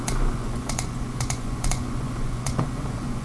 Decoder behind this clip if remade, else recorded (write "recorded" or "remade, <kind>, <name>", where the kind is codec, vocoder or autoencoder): remade, vocoder, Vocos